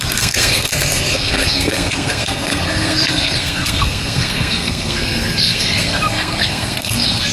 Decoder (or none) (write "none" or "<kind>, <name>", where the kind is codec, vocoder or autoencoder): codec, SNAC